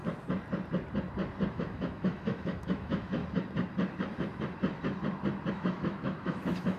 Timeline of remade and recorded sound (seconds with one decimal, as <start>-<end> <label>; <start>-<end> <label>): 0.0-1.5 recorded; 1.5-3.2 remade; 3.2-5.5 recorded; 5.5-6.8 remade

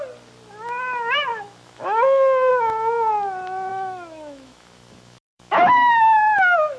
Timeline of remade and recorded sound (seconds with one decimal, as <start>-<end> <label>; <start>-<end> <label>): 0.0-1.3 recorded; 1.3-2.5 remade; 2.5-3.7 recorded; 3.7-6.8 remade

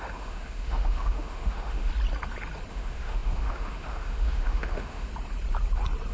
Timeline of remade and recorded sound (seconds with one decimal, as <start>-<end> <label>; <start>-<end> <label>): 0.0-1.9 remade; 1.9-2.7 recorded; 2.7-5.1 remade; 5.1-6.1 recorded

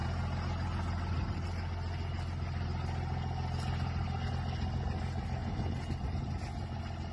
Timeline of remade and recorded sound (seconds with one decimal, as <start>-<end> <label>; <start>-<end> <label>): 0.0-7.1 recorded

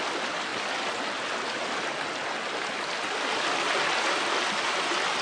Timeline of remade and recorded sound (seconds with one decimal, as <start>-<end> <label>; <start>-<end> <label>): 0.0-5.2 recorded

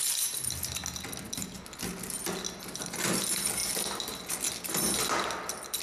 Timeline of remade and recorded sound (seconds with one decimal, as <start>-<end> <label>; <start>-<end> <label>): 0.0-5.8 recorded

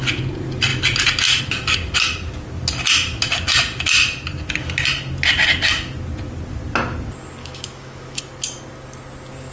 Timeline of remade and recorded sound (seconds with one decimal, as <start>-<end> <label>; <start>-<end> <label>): 0.0-7.4 recorded; 7.4-8.2 remade; 8.2-9.5 recorded

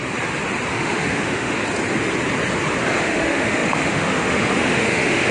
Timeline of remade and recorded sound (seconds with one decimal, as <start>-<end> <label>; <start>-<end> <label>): 0.0-0.7 recorded; 0.7-1.6 remade; 1.6-3.0 recorded; 3.0-5.3 remade